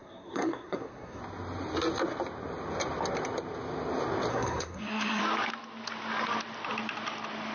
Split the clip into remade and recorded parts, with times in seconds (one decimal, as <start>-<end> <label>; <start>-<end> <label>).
0.0-1.2 remade; 1.2-4.3 recorded; 4.3-5.2 remade; 5.2-7.5 recorded